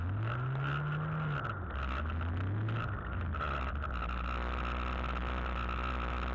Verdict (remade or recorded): recorded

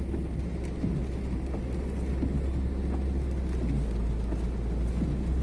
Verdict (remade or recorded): recorded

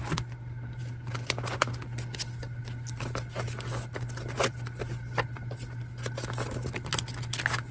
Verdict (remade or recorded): recorded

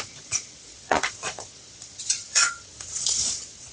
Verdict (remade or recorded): remade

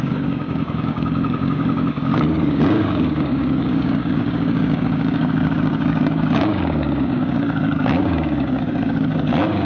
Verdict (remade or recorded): remade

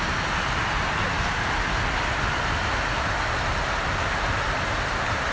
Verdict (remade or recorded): recorded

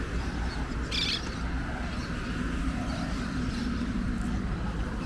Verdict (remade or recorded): recorded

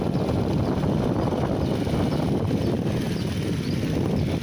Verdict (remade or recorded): recorded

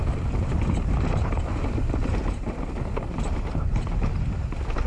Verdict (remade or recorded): recorded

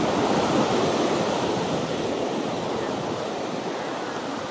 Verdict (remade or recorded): recorded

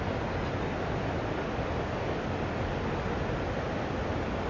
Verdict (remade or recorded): recorded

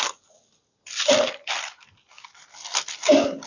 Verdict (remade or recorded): remade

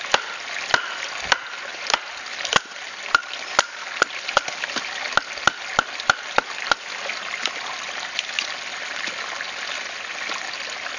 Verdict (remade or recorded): recorded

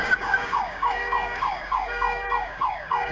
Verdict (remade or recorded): remade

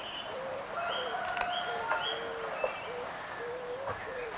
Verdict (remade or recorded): recorded